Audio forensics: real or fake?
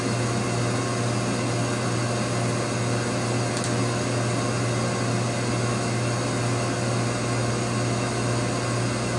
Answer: real